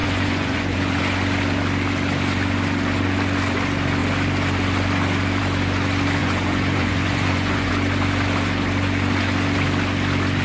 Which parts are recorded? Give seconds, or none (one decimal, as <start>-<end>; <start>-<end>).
1.0-6.2; 7.7-10.4